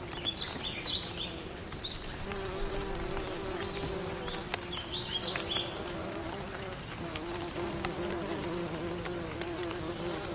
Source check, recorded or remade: recorded